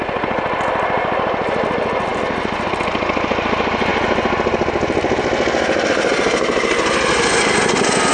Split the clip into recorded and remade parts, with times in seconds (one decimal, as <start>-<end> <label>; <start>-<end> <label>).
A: 0.0-8.1 recorded